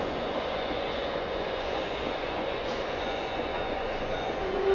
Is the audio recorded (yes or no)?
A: no